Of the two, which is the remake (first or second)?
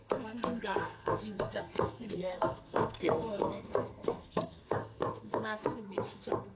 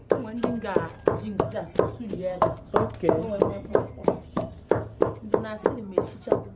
first